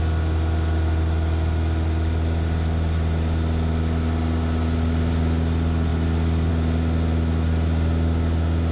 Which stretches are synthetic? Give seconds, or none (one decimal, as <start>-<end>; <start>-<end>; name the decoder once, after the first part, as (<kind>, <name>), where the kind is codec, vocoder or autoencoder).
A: none